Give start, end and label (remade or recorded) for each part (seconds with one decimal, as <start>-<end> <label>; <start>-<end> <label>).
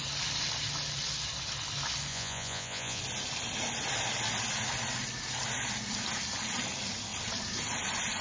0.0-2.1 recorded; 2.1-3.0 remade; 3.0-8.2 recorded